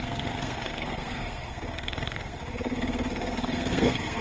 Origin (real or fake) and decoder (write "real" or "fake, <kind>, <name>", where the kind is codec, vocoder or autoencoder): fake, codec, SNAC